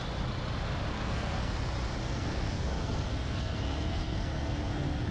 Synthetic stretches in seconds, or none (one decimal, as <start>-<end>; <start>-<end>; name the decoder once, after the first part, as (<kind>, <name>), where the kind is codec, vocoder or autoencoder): 0.9-1.5 (codec, SNAC); 2.0-5.1